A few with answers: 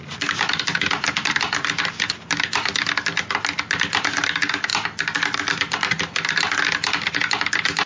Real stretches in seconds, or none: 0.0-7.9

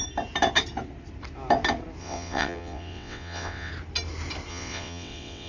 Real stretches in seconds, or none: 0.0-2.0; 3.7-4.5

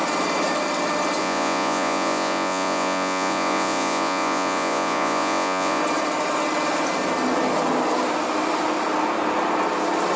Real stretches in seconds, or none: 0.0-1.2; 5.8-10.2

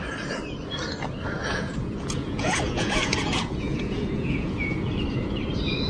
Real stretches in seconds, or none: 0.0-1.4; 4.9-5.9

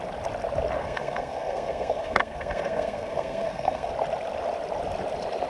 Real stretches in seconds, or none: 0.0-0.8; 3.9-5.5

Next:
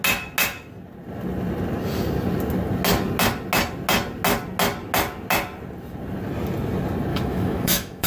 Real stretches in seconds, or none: 0.0-7.1